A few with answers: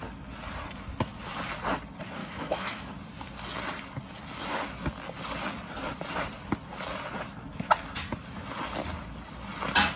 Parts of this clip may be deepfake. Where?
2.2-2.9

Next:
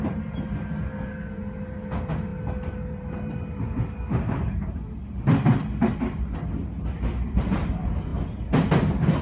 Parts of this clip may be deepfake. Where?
none

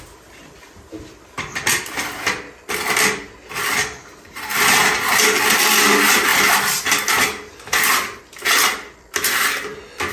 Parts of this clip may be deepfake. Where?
none

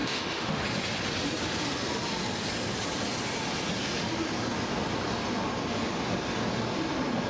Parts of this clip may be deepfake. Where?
0.0-0.6

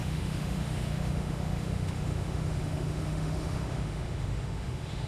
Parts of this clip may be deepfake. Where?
0.0-5.1

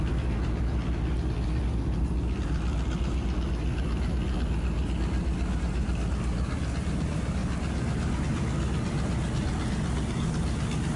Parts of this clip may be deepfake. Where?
none

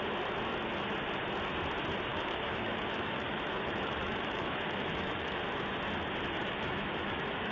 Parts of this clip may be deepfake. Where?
2.1-5.4; 6.4-7.5

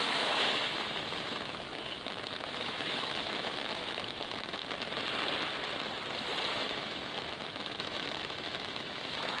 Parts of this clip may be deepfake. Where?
0.0-4.6; 6.5-9.4